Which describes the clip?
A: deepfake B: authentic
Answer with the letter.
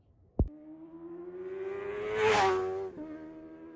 B